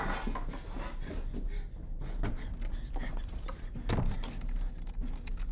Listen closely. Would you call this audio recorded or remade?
recorded